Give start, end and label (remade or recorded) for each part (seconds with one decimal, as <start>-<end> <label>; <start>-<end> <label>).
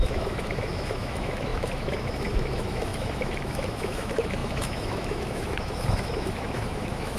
0.0-7.2 remade